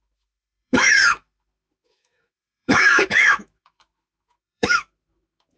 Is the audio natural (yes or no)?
no